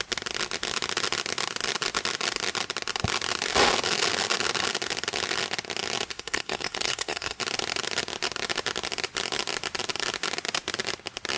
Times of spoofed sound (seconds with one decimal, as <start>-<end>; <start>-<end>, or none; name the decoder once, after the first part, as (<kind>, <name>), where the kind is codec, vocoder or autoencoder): 6.1-7.4 (codec, SNAC)